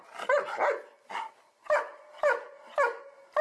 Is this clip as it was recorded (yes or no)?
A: yes